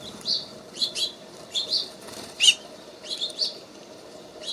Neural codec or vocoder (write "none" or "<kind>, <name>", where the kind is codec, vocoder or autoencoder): vocoder, BigVGAN v2